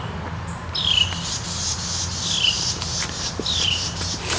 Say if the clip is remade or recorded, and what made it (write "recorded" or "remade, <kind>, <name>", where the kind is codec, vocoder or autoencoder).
recorded